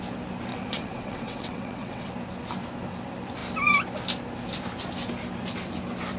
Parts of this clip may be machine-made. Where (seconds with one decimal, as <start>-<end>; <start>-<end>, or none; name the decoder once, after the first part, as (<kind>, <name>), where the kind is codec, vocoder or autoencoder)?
0.5-2.1 (vocoder, WaveNeXt)